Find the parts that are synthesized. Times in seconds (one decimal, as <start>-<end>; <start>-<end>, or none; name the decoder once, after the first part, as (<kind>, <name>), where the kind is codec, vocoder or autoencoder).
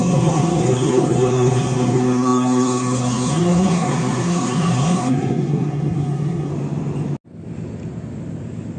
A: 0.0-6.5 (codec, SNAC)